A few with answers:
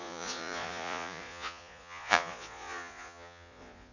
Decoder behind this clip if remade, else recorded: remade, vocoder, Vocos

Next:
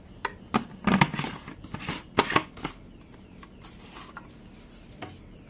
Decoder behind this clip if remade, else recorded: recorded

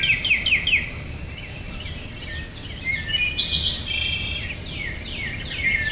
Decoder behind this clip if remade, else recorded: recorded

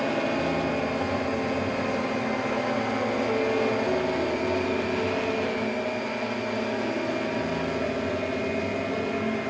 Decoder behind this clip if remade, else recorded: recorded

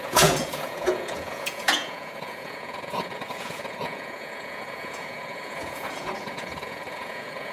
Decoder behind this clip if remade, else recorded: remade, vocoder, Vocos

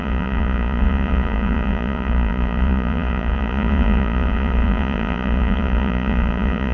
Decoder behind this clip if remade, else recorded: remade, vocoder, Vocos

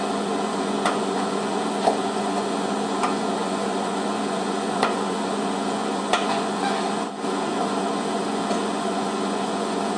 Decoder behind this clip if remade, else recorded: remade, vocoder, Vocos